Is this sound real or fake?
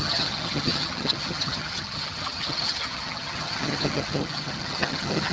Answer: fake